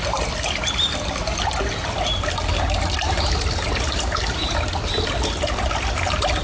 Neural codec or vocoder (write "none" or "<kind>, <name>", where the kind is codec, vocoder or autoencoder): none